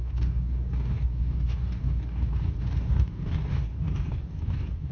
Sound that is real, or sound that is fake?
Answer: fake